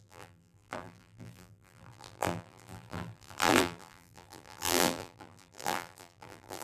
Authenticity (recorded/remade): remade